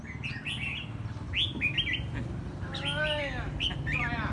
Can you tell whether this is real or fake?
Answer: real